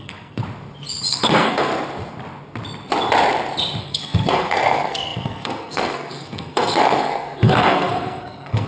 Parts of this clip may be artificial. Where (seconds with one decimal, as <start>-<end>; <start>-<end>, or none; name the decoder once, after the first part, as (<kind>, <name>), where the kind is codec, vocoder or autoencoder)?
0.0-0.4 (codec, SNAC); 1.1-1.7; 3.8-8.7